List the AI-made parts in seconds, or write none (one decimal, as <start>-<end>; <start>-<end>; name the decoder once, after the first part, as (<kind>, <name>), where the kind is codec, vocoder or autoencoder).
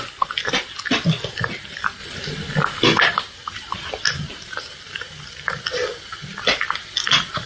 none